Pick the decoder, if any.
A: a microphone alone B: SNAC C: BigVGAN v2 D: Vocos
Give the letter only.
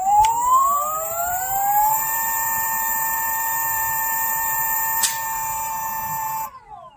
C